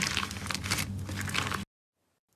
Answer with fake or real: real